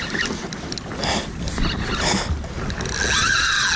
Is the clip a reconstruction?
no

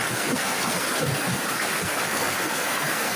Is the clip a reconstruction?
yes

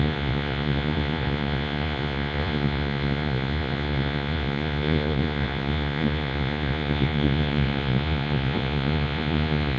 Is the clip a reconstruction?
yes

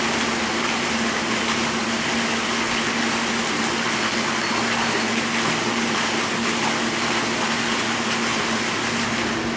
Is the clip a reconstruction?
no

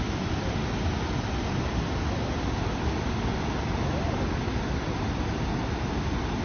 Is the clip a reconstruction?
no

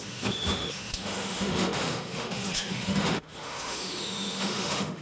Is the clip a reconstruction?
yes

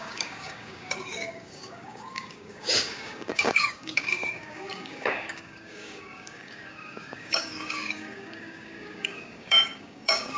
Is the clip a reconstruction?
yes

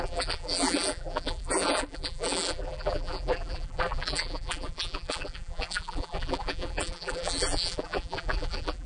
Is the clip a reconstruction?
yes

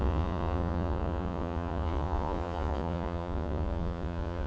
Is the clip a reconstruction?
yes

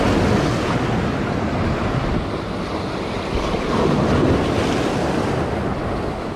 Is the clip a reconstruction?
no